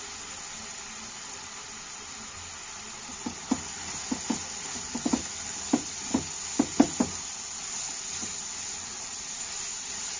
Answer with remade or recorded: recorded